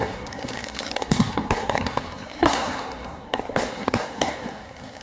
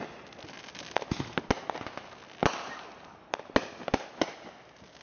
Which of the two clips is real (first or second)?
second